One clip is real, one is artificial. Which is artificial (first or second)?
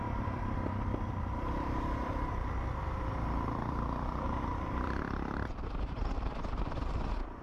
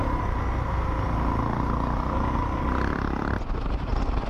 first